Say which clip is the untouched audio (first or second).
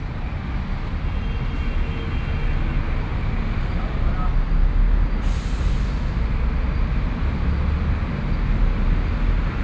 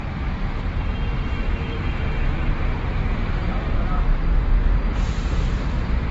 first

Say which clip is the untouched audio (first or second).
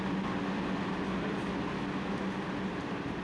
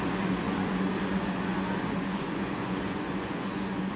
first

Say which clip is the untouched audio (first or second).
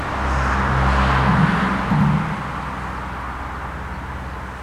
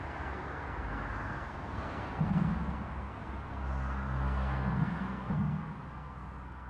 first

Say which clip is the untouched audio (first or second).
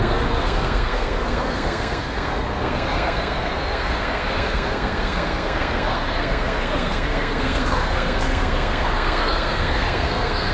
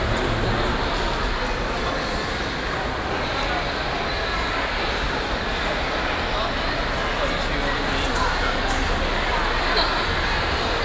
second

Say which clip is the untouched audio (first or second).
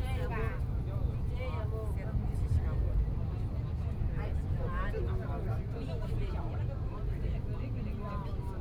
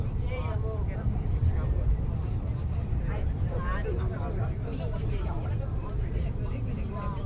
first